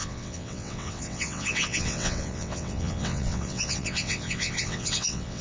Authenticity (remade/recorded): remade